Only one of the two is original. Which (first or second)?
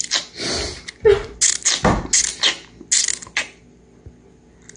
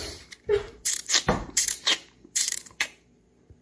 first